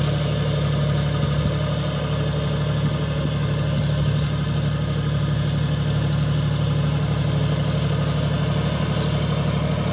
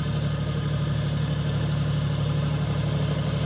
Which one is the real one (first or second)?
first